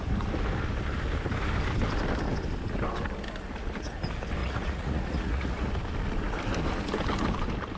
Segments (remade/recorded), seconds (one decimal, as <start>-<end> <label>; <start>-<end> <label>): 0.0-4.4 recorded; 4.4-5.7 remade; 5.7-7.8 recorded